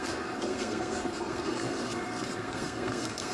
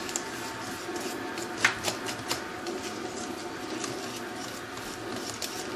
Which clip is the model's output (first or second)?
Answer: first